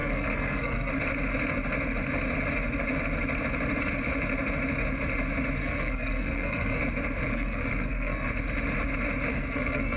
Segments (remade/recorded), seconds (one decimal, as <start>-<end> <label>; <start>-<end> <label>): 0.0-0.9 remade; 0.9-5.6 recorded; 5.6-6.8 remade; 6.8-7.3 recorded; 7.3-8.3 remade; 8.3-9.3 recorded; 9.3-10.0 remade